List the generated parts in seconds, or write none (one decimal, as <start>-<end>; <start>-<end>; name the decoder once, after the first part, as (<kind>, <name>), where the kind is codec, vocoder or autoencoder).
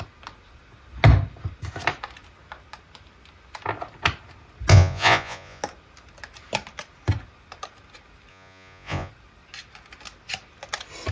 4.7-5.6 (vocoder, Vocos); 8.3-9.1